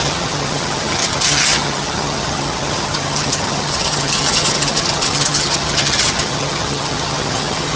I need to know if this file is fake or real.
fake